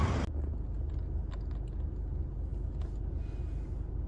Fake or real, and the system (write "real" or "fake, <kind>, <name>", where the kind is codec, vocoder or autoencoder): real